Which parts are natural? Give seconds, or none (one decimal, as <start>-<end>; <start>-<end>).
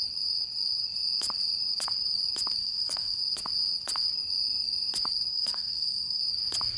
0.0-2.6; 3.2-5.3; 6.2-6.8